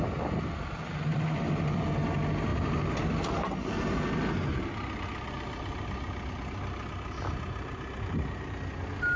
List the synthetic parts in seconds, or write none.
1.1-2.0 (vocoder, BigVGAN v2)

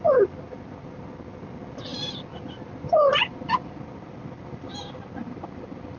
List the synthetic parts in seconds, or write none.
1.9-2.9 (vocoder, BigVGAN v2); 3.3-3.8; 5.2-6.0

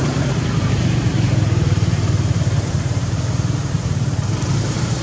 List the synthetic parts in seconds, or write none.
0.0-5.0 (vocoder, BigVGAN v2)

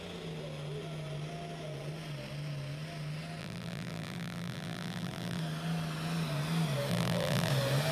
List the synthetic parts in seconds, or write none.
3.4-5.4 (vocoder, BigVGAN v2); 6.9-7.5

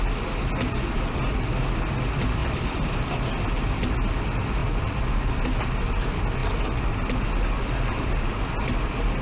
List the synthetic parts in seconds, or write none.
2.4-3.1 (vocoder, BigVGAN v2); 4.6-5.3